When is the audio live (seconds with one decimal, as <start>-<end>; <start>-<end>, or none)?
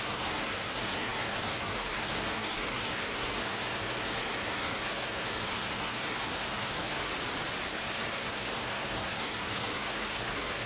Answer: 7.1-7.7